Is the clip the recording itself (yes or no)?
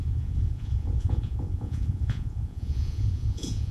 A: no